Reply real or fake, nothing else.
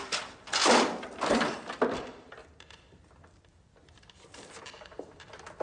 fake